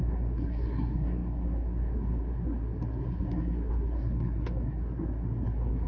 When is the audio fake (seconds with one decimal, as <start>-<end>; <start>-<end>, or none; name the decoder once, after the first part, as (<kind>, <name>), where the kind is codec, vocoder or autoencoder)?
0.0-5.9 (codec, SNAC)